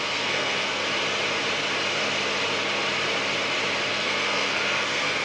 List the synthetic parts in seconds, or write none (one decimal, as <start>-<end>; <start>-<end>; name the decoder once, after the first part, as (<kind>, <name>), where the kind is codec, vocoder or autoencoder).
0.0-0.8 (codec, SNAC); 3.9-5.2